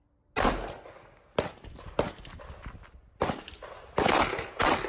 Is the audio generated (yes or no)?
no